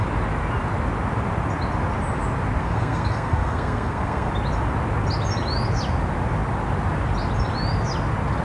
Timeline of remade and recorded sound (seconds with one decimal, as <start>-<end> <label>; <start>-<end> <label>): 0.0-2.6 recorded; 2.6-4.3 remade; 4.3-8.4 recorded